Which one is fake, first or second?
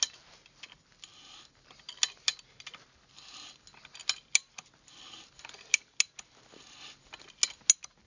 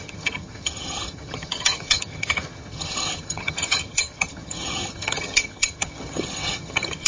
second